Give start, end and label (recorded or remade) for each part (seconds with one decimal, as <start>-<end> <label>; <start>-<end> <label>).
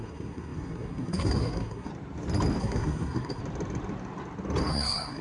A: 0.0-1.9 remade; 1.9-2.6 recorded; 2.6-3.4 remade; 3.4-4.7 recorded; 4.7-5.2 remade